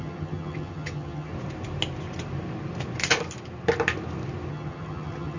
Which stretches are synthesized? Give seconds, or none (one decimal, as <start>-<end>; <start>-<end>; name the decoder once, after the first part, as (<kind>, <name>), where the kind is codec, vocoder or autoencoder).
0.0-1.3 (vocoder, HiFi-GAN); 4.5-5.4